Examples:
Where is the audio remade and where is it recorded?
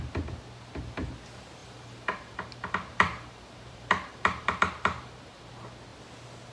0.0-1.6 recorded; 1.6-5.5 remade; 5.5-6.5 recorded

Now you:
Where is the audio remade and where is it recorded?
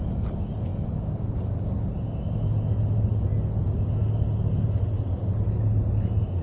0.0-6.4 recorded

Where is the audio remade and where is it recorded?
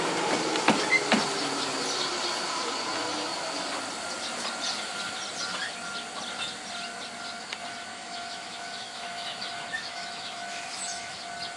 0.0-7.9 recorded; 7.9-11.2 remade; 11.2-11.6 recorded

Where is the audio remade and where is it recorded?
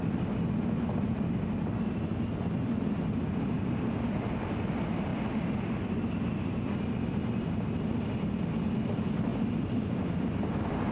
0.0-10.9 recorded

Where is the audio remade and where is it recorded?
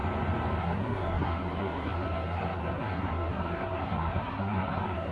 0.0-0.6 recorded; 0.6-5.1 remade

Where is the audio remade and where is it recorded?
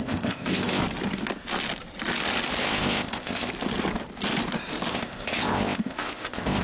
0.0-0.8 remade; 0.8-2.6 recorded; 2.6-3.5 remade; 3.5-4.9 recorded; 4.9-6.6 remade